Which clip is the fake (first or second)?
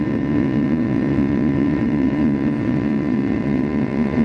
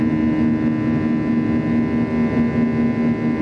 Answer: first